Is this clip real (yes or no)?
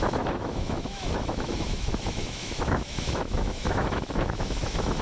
no